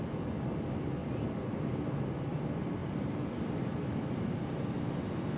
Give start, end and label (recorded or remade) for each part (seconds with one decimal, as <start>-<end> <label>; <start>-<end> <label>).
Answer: 0.0-1.0 recorded; 1.0-1.8 remade; 1.8-2.8 recorded; 2.8-4.4 remade; 4.4-5.4 recorded